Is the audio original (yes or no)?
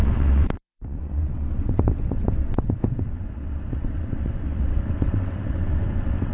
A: no